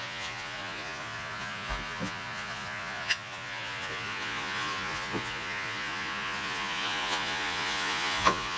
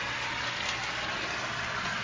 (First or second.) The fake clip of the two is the first